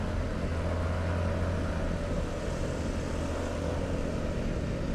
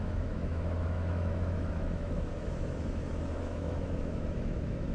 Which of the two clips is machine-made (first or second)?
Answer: second